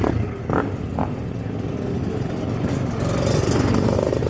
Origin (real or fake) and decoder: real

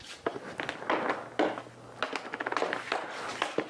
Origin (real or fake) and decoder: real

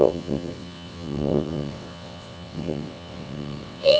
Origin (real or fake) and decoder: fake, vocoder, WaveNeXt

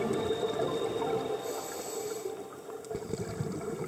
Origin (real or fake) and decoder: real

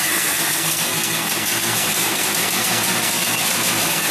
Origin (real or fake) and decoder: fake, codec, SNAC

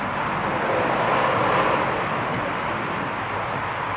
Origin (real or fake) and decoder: real